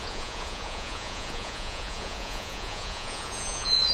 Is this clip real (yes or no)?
no